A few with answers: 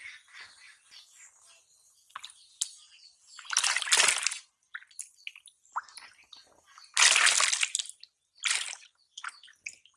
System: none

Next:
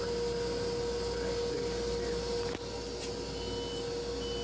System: none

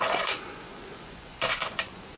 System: vocoder, Vocos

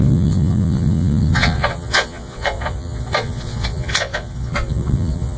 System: vocoder, Vocos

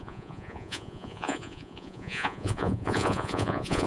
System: vocoder, Vocos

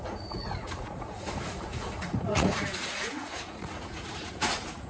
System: vocoder, Vocos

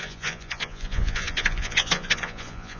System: vocoder, Vocos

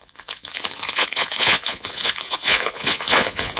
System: vocoder, Vocos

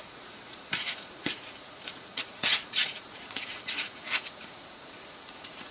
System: vocoder, Vocos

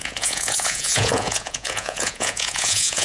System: vocoder, Vocos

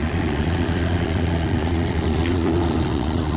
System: vocoder, Vocos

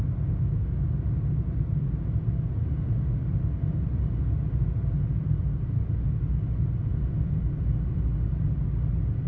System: none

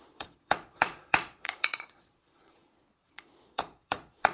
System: vocoder, Vocos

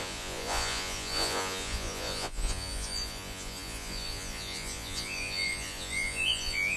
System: vocoder, Vocos